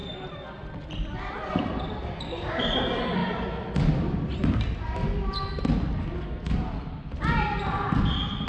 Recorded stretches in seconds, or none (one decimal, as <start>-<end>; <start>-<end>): 1.5-8.5